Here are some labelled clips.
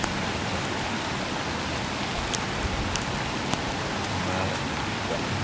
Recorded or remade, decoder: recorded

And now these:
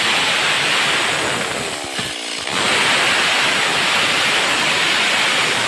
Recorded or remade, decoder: recorded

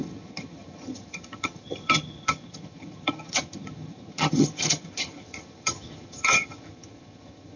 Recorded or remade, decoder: remade, vocoder, HiFi-GAN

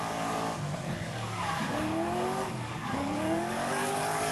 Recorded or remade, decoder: remade, codec, DAC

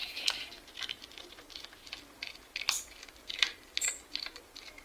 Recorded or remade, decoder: recorded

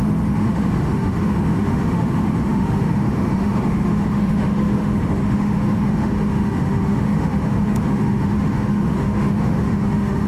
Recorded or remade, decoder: remade, autoencoder, DAC-VAE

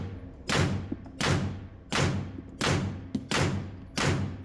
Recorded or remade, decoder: recorded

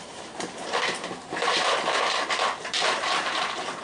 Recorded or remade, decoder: remade, vocoder, BigVGAN v2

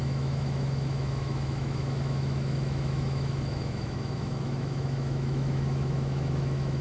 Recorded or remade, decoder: remade, autoencoder, DAC-VAE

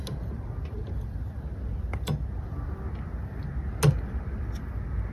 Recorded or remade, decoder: recorded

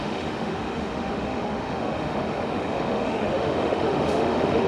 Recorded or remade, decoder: remade, autoencoder, DAC-VAE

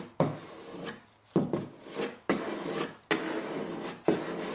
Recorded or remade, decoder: recorded